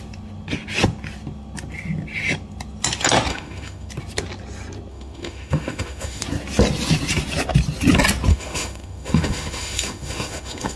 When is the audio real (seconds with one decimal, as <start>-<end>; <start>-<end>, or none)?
0.0-3.3; 3.9-4.9; 6.2-8.3